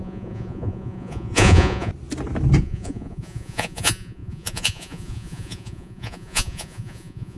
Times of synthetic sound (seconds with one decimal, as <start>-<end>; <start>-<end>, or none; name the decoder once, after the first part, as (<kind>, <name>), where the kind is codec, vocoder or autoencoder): 0.0-1.9 (vocoder, Vocos); 2.6-7.4